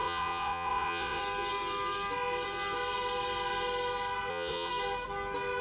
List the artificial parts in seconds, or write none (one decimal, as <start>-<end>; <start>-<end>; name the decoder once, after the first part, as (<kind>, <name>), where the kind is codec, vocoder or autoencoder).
0.0-1.2 (vocoder, Vocos); 4.3-4.7